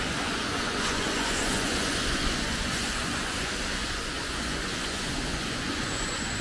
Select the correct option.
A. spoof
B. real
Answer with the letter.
A